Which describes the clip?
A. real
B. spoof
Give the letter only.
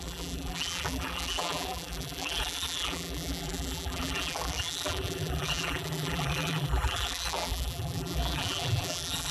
B